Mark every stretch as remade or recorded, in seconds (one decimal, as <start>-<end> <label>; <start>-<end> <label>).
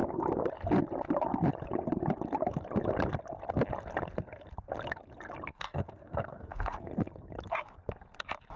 0.0-5.5 recorded; 5.5-6.9 remade; 6.9-8.6 recorded